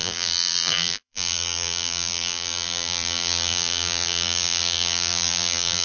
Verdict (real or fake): fake